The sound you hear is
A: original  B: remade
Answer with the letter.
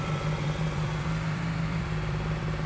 B